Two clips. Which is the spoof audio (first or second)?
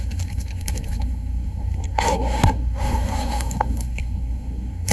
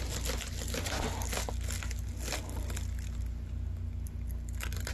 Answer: first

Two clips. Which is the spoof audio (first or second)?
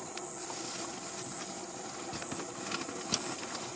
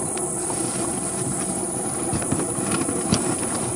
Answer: second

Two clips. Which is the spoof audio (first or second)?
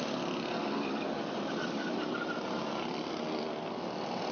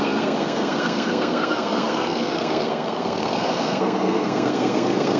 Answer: second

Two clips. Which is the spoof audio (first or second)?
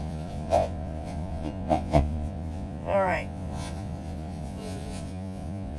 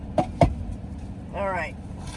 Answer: first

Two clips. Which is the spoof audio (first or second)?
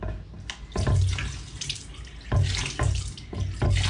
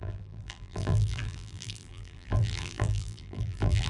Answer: second